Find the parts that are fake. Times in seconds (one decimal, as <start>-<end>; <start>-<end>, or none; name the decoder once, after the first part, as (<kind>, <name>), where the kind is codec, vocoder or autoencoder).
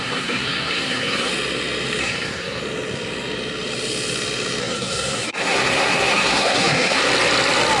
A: 0.0-1.3 (codec, SNAC); 2.0-2.6; 4.6-7.0